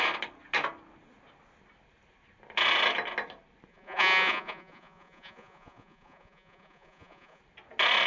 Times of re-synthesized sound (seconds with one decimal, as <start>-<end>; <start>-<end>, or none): 3.7-7.4